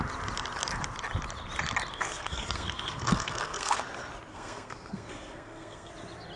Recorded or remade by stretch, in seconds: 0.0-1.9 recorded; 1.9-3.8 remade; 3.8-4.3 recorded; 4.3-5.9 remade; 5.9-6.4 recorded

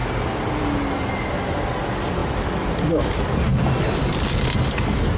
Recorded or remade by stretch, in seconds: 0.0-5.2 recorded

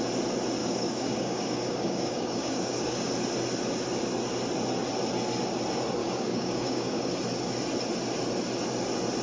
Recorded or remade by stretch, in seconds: 0.0-0.6 recorded; 0.6-3.1 remade; 3.1-6.0 recorded; 6.0-7.1 remade; 7.1-9.2 recorded